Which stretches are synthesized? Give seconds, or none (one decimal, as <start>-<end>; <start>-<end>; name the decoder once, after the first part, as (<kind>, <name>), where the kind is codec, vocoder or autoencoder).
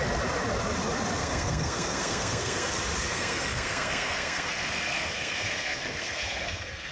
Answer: 1.2-2.7 (codec, SNAC); 3.1-6.9